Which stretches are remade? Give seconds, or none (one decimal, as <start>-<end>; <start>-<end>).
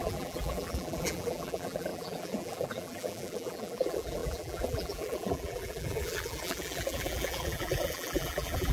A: 0.0-8.7